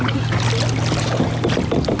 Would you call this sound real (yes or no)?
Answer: yes